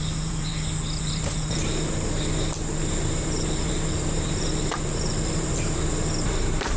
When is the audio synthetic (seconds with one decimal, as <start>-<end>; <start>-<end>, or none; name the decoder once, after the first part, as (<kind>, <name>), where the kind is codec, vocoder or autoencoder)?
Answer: 0.0-0.5 (vocoder, BigVGAN v2); 1.0-6.8